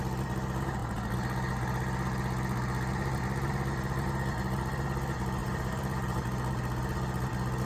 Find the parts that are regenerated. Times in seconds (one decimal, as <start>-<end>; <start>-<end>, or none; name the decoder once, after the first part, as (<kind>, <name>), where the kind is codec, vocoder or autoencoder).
5.4-6.2 (vocoder, BigVGAN v2)